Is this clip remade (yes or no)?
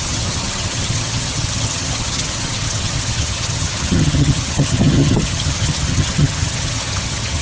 yes